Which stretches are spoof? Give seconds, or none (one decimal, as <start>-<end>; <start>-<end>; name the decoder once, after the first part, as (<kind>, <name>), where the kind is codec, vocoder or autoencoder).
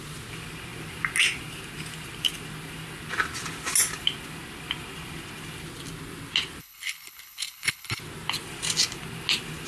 6.6-8.0 (codec, HILCodec)